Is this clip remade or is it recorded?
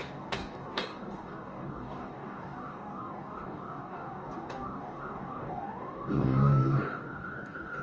remade